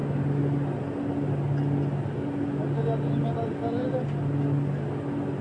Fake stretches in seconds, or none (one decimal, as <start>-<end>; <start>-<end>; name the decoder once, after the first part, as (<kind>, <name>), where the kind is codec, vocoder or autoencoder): none